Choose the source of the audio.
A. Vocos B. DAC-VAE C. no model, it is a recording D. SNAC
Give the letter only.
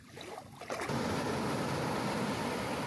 C